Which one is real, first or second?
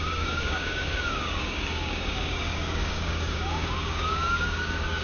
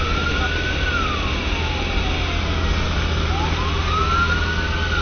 second